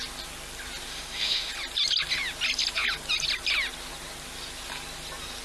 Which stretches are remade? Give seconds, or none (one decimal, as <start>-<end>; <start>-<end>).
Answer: 0.9-1.5